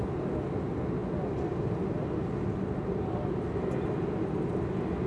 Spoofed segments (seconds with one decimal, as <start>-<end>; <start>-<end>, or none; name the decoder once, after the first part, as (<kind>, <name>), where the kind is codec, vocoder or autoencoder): none